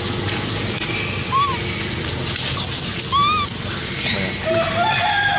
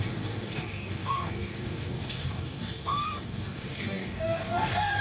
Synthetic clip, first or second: second